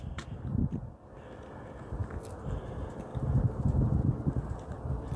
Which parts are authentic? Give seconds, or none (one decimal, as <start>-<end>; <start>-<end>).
0.0-5.2